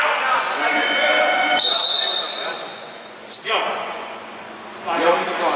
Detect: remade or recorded remade